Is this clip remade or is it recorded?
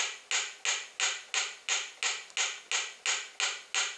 recorded